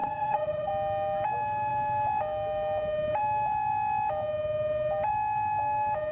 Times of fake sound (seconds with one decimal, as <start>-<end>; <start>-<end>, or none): 0.0-0.7